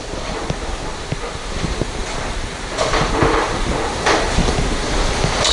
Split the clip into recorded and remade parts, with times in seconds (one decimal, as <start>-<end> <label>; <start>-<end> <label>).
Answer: 0.0-5.5 recorded

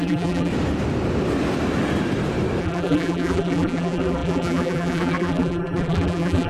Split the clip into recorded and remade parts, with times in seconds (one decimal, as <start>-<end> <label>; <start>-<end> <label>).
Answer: 0.0-0.5 remade; 0.5-2.6 recorded; 2.6-6.5 remade

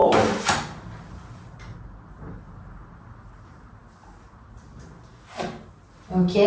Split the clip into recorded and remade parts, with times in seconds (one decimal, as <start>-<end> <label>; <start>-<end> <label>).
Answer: 0.0-6.5 recorded

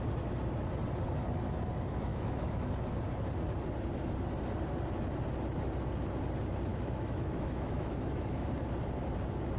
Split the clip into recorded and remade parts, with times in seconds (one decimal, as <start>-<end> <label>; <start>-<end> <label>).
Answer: 0.0-2.1 recorded; 2.1-2.7 remade; 2.7-6.7 recorded; 6.7-8.5 remade; 8.5-9.6 recorded

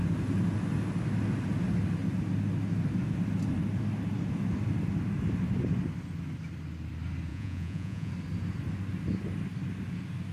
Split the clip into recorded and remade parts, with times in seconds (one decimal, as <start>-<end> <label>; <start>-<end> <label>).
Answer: 0.0-7.3 recorded; 7.3-8.1 remade; 8.1-10.3 recorded

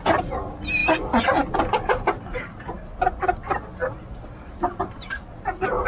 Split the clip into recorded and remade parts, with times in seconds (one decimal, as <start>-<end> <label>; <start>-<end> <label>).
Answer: 0.0-5.9 recorded